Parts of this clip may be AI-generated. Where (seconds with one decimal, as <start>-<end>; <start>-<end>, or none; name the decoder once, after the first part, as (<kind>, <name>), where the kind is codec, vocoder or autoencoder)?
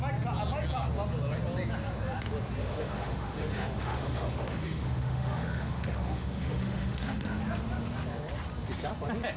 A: 2.6-7.4 (autoencoder, DAC-VAE)